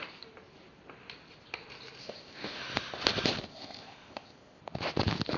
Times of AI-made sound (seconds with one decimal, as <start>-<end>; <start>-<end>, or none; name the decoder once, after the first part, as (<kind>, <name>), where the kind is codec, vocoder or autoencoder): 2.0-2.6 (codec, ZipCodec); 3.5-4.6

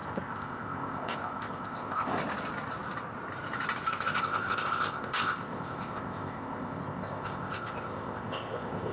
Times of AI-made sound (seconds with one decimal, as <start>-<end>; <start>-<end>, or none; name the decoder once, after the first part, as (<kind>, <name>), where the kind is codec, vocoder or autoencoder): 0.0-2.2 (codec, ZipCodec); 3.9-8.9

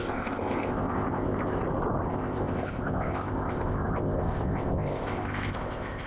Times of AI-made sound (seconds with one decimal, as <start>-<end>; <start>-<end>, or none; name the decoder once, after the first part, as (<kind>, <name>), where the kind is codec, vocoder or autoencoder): 0.0-1.6 (codec, ZipCodec); 2.1-6.1